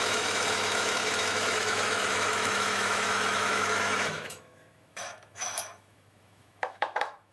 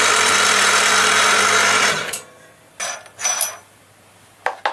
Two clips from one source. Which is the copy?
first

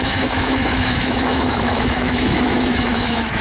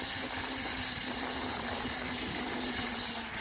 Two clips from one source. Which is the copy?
first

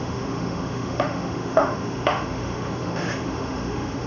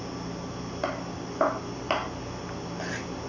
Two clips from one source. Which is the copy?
first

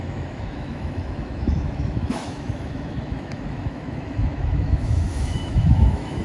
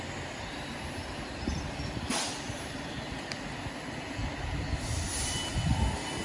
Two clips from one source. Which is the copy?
first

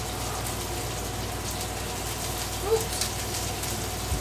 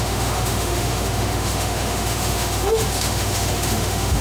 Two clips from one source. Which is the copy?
second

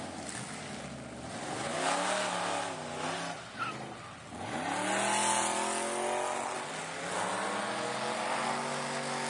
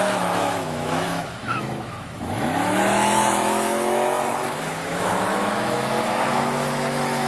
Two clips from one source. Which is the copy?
second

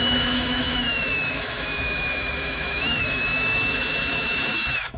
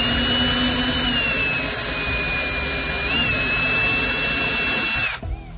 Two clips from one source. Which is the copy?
first